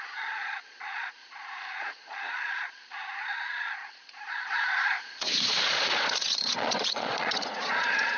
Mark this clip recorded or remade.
remade